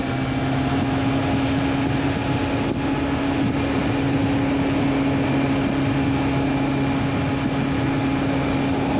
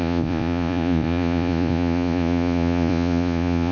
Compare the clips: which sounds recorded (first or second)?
first